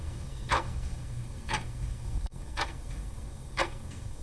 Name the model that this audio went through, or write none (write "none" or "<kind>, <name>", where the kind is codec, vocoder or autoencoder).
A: codec, SNAC